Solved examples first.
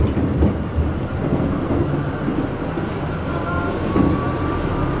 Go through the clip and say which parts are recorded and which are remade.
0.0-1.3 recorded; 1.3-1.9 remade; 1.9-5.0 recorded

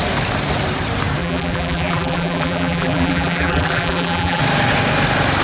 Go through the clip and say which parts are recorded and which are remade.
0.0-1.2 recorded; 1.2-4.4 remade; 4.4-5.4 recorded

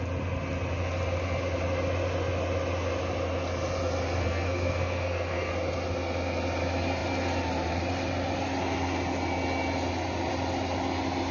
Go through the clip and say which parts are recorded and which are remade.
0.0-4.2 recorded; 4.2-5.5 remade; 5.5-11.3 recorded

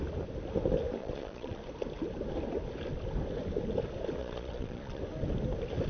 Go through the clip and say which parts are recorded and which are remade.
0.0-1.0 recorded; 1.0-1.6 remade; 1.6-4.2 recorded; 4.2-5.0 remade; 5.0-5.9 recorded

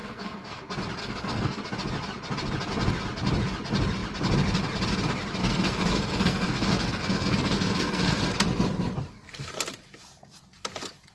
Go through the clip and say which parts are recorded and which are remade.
0.0-0.6 remade; 0.6-1.0 recorded; 1.0-1.6 remade; 1.6-5.4 recorded; 5.4-8.2 remade; 8.2-11.1 recorded